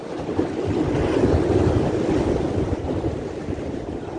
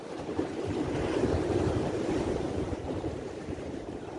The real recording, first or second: first